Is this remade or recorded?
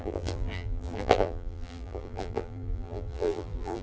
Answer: remade